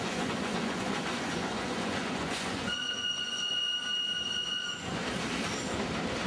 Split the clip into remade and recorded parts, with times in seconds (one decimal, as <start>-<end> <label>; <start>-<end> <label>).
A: 0.0-3.7 remade; 3.7-4.5 recorded; 4.5-5.0 remade; 5.0-6.3 recorded